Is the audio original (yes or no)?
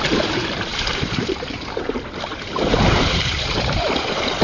no